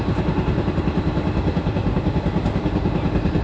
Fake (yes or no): no